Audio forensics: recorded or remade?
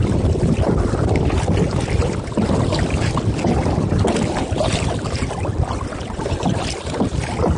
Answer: recorded